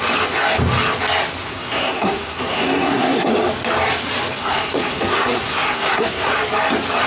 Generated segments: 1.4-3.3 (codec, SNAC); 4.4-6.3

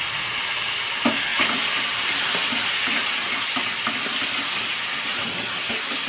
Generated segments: none

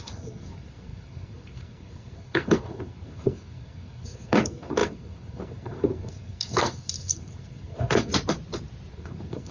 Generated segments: 0.0-8.1 (codec, SNAC); 8.9-9.5

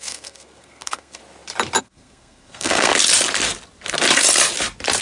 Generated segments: 0.0-1.2 (codec, SNAC); 1.8-2.9

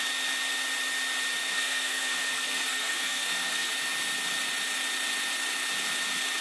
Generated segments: 1.4-3.7 (codec, SNAC)

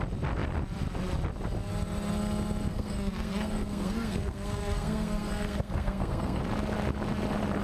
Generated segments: 2.7-6.4 (codec, SNAC)

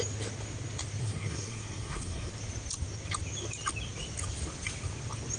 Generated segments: 1.0-2.3 (codec, SNAC)